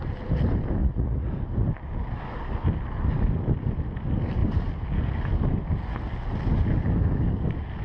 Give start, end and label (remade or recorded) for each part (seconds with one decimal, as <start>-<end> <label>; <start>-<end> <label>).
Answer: 0.0-0.8 recorded; 0.8-1.3 remade; 1.3-7.8 recorded